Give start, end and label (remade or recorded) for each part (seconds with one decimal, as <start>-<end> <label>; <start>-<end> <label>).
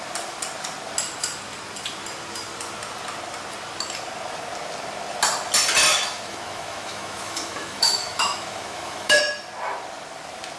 0.0-5.9 recorded; 5.9-9.2 remade; 9.2-10.6 recorded